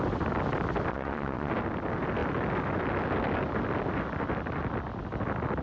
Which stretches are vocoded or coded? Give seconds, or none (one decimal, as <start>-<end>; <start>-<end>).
0.9-1.5